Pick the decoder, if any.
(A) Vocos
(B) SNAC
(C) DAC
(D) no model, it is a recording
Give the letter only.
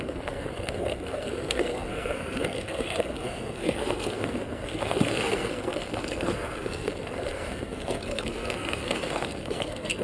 B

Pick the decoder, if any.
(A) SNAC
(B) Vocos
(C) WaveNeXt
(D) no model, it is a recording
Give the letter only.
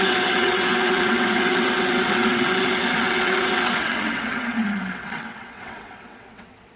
C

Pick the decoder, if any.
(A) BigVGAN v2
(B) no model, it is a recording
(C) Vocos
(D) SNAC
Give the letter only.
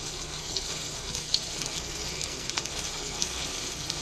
D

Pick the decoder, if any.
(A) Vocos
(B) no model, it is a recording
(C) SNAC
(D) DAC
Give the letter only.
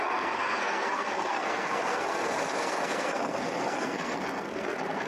C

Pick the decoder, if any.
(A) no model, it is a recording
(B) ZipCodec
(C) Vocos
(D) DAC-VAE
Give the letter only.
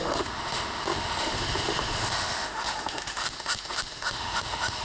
D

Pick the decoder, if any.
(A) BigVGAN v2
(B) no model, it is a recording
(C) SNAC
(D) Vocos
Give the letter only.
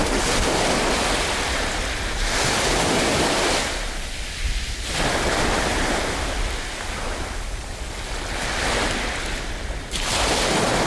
B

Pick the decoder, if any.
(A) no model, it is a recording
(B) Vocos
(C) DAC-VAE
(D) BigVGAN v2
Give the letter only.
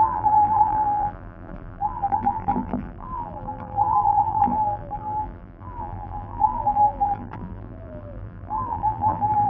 D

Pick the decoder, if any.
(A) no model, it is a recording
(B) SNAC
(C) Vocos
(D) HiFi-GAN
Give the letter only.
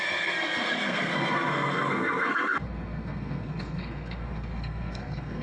B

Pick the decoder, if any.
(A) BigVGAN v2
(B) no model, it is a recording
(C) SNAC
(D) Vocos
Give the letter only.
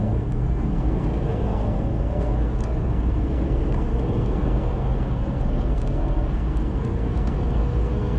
C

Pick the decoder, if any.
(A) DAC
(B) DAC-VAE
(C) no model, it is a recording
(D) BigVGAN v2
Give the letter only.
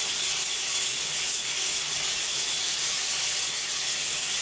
A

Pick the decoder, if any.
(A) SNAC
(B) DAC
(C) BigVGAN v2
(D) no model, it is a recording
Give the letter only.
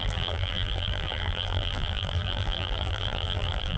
C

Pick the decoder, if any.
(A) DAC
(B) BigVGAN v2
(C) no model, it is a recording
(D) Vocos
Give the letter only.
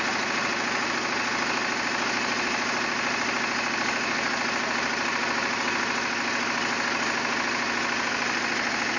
C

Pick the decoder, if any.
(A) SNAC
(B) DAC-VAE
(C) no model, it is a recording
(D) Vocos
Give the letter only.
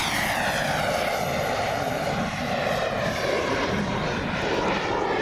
C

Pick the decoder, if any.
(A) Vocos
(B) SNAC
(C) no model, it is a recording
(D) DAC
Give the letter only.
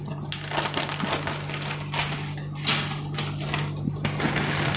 C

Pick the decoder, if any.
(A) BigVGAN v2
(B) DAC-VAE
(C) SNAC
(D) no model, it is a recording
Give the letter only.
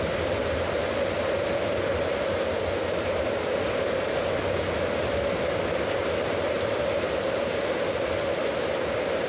D